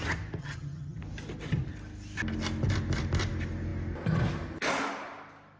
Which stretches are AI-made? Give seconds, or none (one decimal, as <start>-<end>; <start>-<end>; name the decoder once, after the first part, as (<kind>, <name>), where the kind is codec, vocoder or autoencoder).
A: 0.4-1.0 (vocoder, HiFi-GAN)